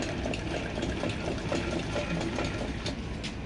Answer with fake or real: real